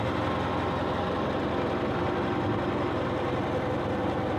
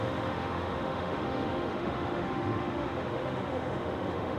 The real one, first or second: first